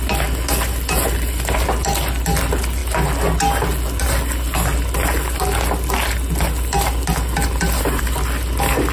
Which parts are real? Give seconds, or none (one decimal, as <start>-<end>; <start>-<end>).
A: 0.0-8.9